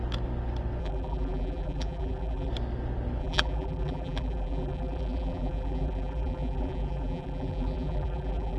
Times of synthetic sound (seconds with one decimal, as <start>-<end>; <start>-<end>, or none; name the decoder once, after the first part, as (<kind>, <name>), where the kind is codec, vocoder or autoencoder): 0.8-2.5 (vocoder, BigVGAN v2); 3.2-8.6